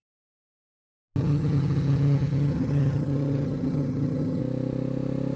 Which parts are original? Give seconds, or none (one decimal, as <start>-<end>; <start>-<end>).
0.0-1.2; 4.4-5.4